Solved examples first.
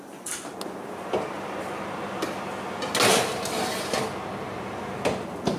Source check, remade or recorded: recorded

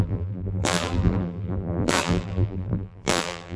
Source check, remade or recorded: remade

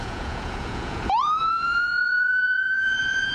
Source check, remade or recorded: remade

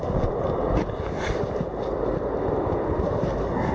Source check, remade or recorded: recorded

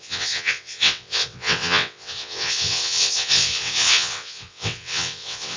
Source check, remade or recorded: remade